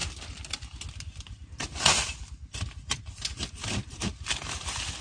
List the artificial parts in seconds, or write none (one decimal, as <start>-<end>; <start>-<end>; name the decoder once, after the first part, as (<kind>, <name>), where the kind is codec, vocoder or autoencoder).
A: none

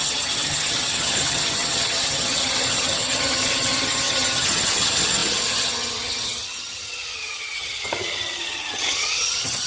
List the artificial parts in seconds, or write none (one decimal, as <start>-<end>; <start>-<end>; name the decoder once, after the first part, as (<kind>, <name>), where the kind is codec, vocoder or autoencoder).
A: 0.0-9.7 (vocoder, HiFi-GAN)